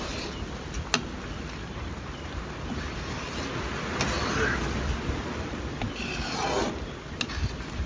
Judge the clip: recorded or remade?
recorded